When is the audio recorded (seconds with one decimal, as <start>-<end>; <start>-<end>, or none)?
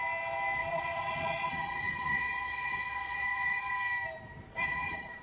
0.0-0.6; 3.7-4.5